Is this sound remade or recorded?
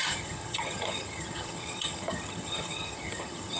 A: remade